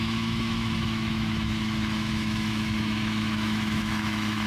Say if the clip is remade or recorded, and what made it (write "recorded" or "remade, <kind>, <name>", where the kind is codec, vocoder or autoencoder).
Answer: remade, autoencoder, DAC-VAE